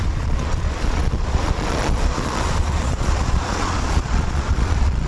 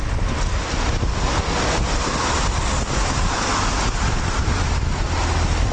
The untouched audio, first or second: second